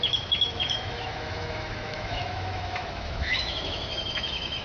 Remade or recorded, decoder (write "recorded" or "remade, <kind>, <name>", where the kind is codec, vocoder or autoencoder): remade, autoencoder, DAC-VAE